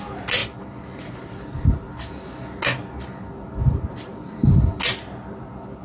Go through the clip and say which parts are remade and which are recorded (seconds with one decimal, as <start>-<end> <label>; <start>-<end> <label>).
0.0-5.8 recorded